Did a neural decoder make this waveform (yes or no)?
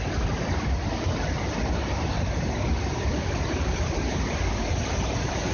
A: no